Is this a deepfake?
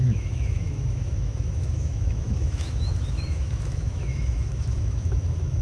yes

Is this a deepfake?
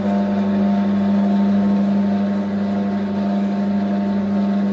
no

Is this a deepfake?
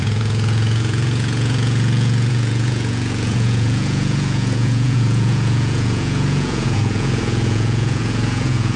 yes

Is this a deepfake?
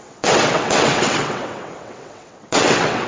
yes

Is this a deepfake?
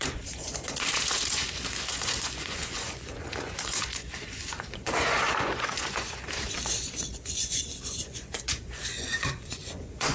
yes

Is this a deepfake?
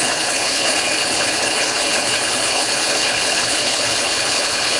yes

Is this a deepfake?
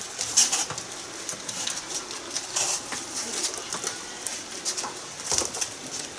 no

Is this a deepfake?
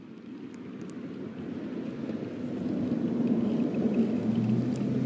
no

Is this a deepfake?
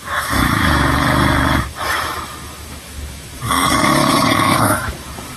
yes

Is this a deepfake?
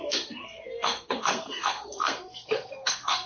yes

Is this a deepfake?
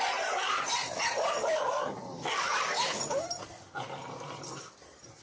no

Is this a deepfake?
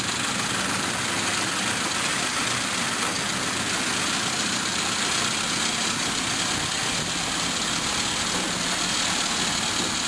no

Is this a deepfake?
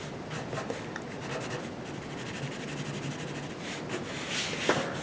no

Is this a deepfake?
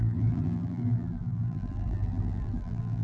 yes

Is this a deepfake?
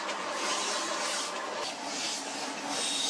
no